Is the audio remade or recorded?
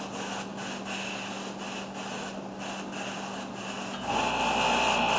recorded